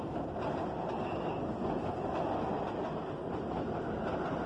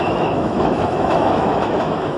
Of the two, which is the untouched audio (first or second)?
first